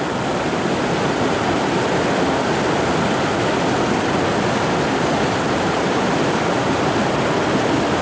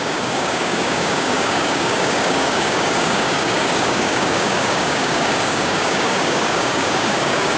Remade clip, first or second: second